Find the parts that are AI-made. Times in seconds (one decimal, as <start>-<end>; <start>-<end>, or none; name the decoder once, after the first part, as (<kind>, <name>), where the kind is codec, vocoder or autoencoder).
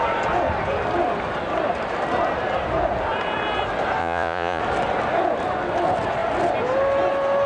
4.0-4.6 (vocoder, Vocos)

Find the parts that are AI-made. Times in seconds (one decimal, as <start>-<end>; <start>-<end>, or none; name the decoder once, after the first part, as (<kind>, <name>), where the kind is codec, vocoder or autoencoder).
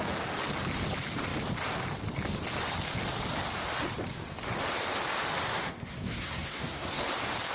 5.5-7.0 (codec, SNAC)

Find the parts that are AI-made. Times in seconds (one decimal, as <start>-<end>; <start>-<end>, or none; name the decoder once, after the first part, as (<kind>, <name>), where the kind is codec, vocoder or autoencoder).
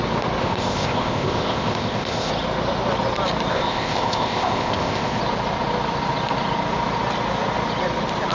0.4-2.3 (codec, ZipCodec); 3.5-5.2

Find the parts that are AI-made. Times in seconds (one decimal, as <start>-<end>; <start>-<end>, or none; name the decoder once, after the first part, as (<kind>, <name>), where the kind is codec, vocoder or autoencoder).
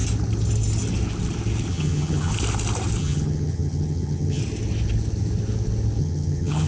1.7-2.3 (vocoder, HiFi-GAN); 3.0-4.4; 6.0-6.7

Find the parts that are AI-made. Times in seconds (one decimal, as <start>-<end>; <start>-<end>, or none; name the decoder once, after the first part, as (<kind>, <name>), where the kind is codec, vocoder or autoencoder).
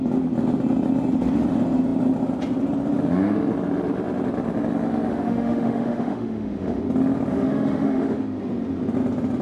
5.1-6.8 (autoencoder, DAC-VAE); 7.3-8.2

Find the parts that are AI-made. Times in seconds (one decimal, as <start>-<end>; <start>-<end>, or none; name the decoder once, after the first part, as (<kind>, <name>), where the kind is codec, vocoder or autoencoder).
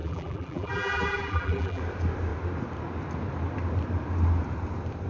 0.0-1.8 (vocoder, BigVGAN v2)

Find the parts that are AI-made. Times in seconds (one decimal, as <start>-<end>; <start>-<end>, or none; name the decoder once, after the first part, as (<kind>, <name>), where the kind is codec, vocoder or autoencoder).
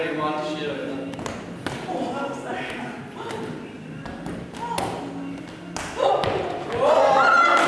none